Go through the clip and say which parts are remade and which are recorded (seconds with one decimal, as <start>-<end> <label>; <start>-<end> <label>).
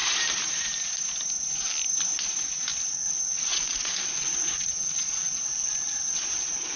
0.0-2.9 recorded; 2.9-6.8 remade